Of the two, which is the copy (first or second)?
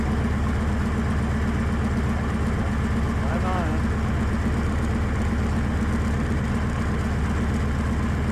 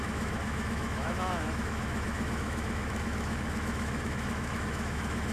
second